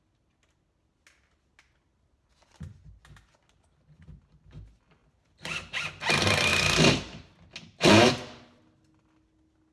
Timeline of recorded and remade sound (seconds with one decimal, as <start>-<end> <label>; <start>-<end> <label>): 0.0-9.7 recorded